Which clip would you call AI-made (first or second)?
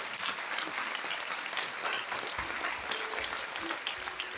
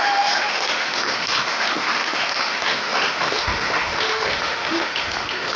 second